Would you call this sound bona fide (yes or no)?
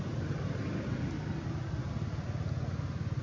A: yes